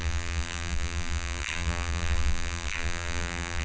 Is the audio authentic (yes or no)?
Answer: no